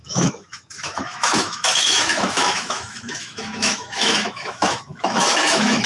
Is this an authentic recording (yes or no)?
no